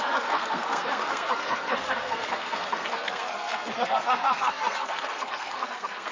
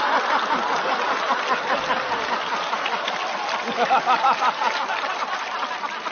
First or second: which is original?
second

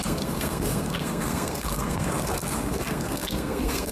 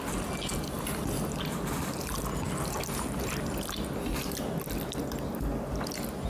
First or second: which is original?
second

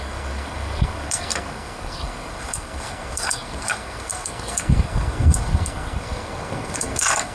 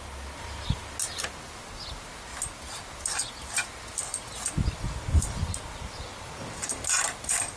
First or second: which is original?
second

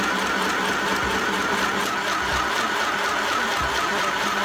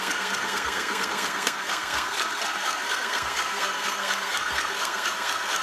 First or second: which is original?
first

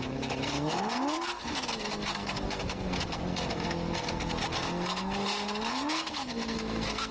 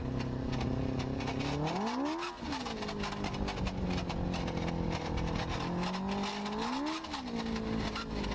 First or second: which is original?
second